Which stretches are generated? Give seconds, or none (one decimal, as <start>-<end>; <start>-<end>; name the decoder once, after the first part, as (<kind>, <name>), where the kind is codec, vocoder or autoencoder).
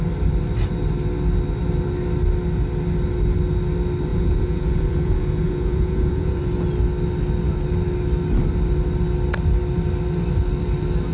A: 4.1-6.4 (vocoder, Vocos)